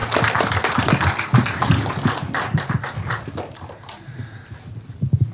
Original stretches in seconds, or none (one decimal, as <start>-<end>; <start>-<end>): 0.0-5.3

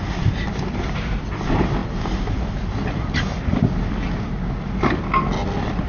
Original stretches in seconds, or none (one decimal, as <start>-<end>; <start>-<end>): 0.0-5.9

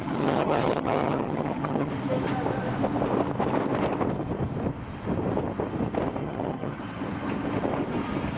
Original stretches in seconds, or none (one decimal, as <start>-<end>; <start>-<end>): 1.9-6.2; 6.8-8.4